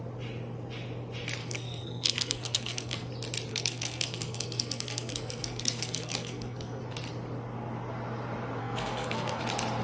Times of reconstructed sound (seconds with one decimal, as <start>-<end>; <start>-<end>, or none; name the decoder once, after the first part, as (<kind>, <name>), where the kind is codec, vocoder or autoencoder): 1.4-3.1 (codec, SNAC); 3.5-6.8; 8.6-9.4